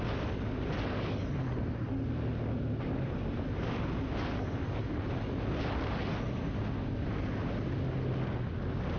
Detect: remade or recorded recorded